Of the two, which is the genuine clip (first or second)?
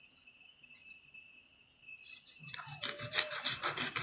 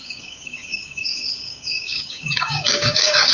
first